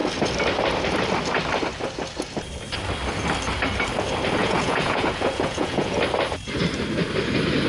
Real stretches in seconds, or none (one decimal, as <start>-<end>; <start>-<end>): 0.0-4.4; 6.0-7.7